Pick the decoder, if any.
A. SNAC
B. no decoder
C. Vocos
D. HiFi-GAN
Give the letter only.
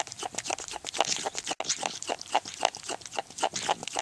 B